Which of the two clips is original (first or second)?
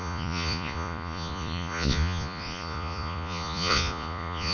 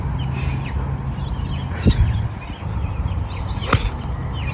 second